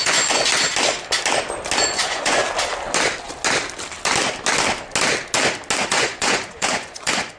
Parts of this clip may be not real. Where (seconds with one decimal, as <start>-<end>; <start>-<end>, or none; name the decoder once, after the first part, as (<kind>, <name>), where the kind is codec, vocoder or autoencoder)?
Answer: 0.0-0.5 (vocoder, Vocos); 1.8-2.4; 5.9-7.4